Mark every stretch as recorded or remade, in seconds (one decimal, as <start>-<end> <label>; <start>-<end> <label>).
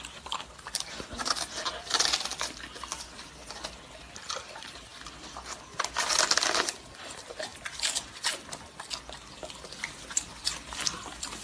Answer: 0.0-2.3 remade; 2.3-4.3 recorded; 4.3-4.9 remade; 4.9-6.2 recorded; 6.2-7.5 remade; 7.5-10.4 recorded; 10.4-11.4 remade